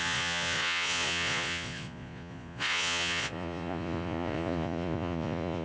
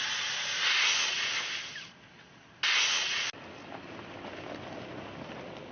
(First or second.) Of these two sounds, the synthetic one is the first